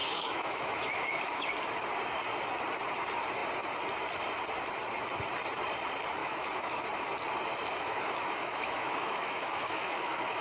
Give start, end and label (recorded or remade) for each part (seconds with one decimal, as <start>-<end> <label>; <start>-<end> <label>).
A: 0.0-1.5 remade; 1.5-6.2 recorded; 6.2-6.8 remade; 6.8-7.7 recorded; 7.7-10.4 remade